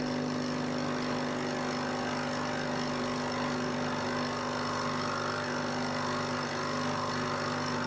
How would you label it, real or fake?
real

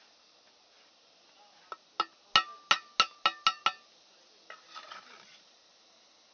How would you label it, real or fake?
real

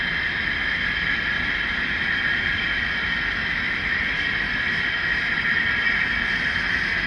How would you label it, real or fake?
real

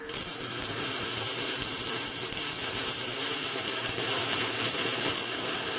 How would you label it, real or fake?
fake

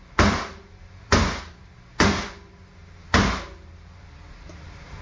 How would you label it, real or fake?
fake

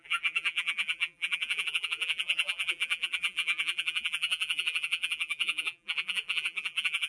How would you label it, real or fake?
fake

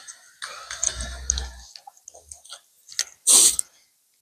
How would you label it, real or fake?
real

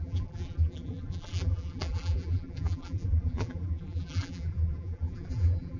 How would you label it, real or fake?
fake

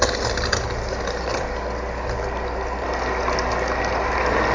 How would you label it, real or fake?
real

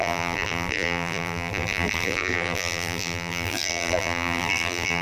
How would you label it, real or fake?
fake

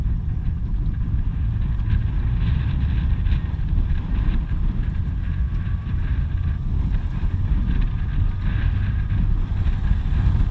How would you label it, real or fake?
real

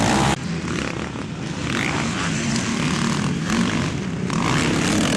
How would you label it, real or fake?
real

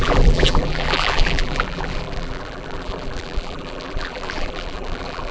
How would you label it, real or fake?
fake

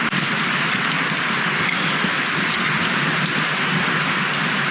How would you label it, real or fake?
real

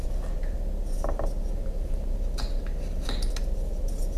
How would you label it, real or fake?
real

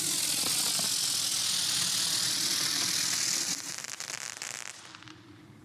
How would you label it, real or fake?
real